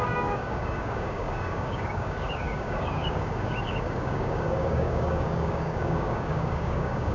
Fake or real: fake